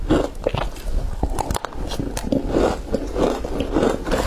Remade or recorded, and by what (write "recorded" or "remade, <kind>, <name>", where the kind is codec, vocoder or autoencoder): recorded